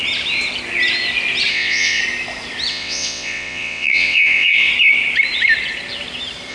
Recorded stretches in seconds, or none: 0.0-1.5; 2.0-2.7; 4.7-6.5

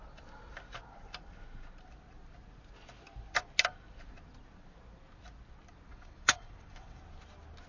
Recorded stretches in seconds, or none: 0.0-5.9; 7.0-7.7